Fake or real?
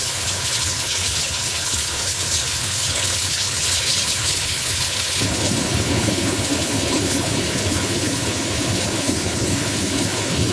fake